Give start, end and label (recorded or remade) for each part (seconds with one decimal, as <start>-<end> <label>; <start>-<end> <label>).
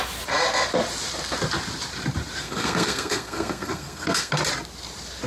0.0-2.4 recorded; 2.4-4.3 remade; 4.3-5.3 recorded